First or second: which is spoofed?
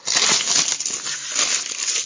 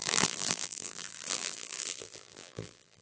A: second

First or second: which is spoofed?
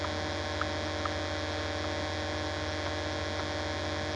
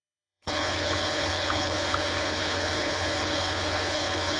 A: second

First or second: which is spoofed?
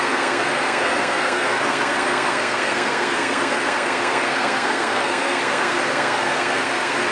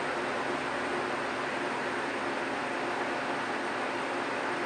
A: first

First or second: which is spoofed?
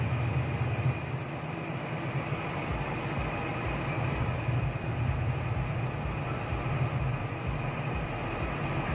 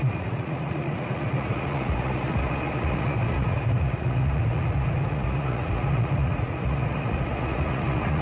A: second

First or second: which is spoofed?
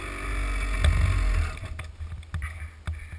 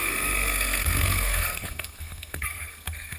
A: second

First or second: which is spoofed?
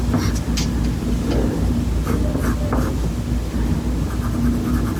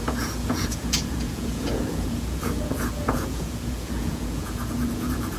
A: second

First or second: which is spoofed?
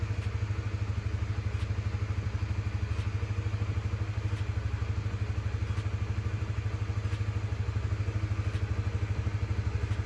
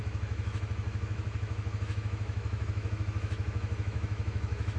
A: second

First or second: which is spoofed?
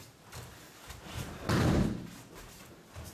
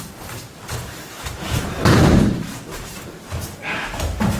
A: second